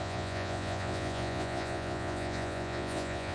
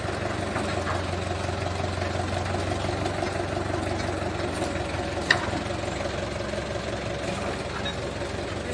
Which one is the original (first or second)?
second